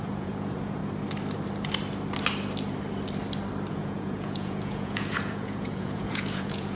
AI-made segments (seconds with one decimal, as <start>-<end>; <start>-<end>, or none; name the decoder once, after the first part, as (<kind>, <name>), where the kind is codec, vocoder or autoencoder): 0.0-0.8 (vocoder, Vocos); 3.7-6.8